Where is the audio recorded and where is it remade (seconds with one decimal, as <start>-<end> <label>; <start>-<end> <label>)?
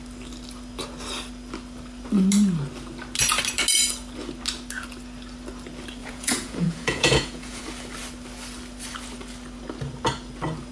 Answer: 0.0-6.0 recorded; 6.0-7.6 remade; 7.6-10.7 recorded